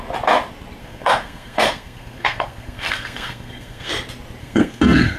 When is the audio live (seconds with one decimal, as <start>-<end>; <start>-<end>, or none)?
0.0-0.8; 3.9-4.4